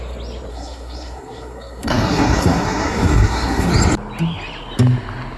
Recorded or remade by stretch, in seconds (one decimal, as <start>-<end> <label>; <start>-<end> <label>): 0.0-0.5 recorded; 0.5-3.7 remade; 3.7-5.4 recorded